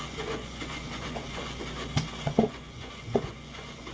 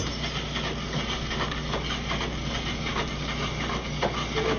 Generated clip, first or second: first